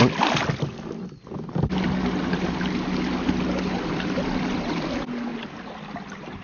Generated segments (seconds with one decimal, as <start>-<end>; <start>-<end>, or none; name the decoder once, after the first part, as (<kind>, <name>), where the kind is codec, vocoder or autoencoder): none